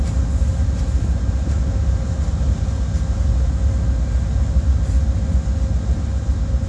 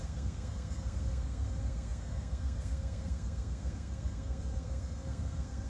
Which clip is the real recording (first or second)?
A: first